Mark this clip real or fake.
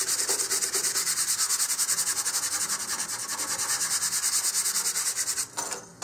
real